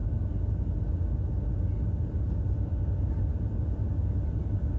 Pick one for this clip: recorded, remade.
recorded